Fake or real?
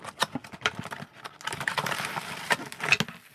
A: real